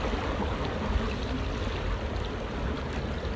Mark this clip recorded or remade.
recorded